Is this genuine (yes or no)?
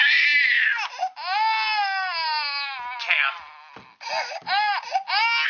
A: yes